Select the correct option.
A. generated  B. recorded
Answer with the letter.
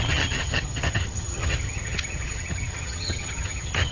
A